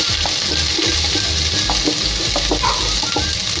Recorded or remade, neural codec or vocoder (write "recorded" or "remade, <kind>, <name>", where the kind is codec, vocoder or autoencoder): recorded